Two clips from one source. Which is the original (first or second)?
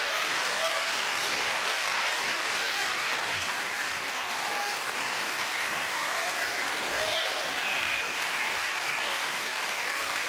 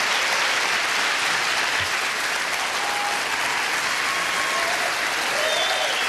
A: second